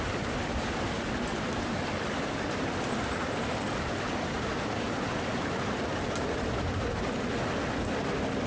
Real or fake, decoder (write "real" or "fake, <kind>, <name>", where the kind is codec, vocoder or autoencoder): real